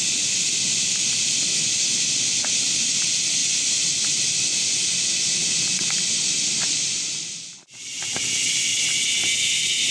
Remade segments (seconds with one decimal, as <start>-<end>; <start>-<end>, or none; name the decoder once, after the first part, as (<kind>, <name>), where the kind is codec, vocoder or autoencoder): none